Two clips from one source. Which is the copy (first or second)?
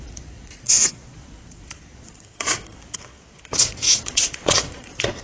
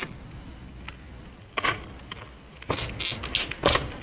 first